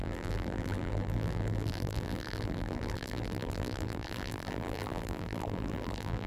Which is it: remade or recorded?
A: remade